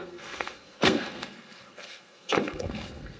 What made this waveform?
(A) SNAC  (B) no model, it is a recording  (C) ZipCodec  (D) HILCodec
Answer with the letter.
A